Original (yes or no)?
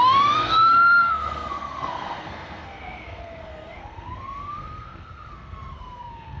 no